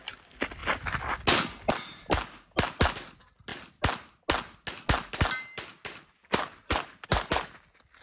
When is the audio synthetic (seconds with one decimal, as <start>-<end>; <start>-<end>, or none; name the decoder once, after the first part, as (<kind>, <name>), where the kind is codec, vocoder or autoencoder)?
none